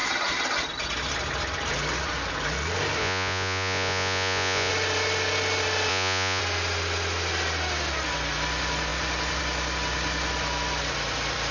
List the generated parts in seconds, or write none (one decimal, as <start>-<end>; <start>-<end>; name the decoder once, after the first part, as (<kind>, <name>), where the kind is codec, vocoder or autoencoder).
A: 3.0-4.7 (vocoder, Vocos); 5.9-6.4